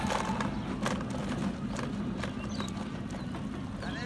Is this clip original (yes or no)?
yes